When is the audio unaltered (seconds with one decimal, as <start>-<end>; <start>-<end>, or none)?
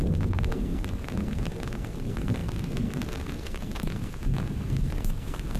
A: none